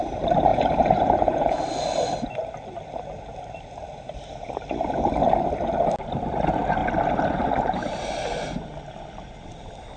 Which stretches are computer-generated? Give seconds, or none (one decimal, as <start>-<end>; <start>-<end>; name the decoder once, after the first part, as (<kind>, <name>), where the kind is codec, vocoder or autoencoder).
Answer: 0.5-1.6 (vocoder, Vocos)